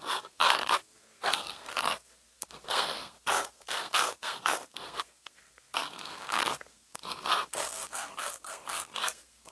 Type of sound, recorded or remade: remade